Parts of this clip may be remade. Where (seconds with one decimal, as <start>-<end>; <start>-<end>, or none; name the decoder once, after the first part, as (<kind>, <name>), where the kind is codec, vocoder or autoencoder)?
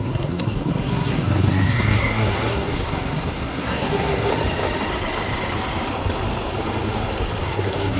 0.0-4.3 (codec, SNAC); 7.4-8.0